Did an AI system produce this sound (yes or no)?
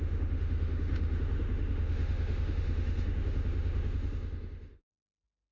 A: yes